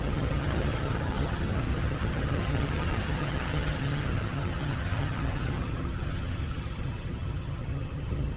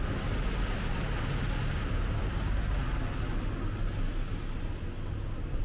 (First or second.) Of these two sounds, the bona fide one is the second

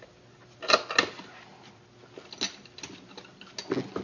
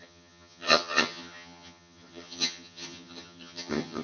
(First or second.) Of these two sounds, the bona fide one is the first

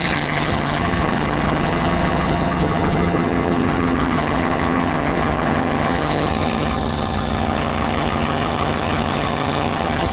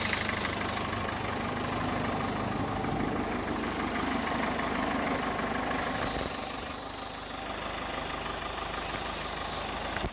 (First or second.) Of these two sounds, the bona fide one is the second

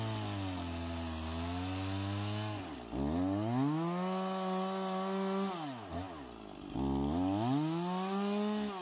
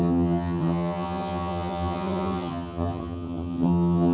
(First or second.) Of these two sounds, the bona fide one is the first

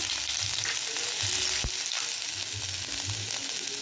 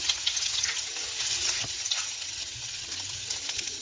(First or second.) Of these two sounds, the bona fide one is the first